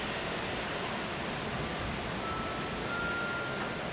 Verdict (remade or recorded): recorded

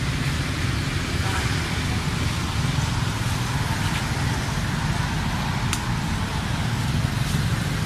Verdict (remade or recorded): recorded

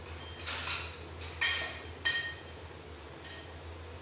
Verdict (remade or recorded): recorded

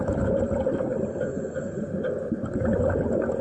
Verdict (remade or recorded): recorded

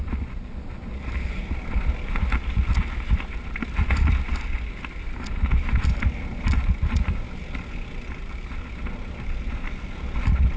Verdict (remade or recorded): recorded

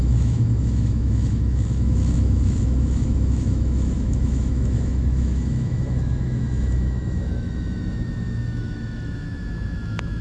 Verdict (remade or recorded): remade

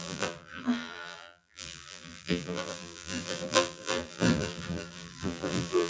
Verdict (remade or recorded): remade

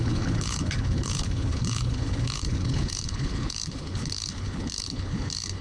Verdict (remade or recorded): remade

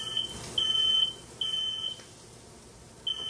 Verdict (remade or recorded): recorded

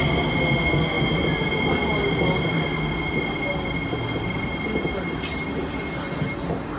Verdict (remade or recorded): recorded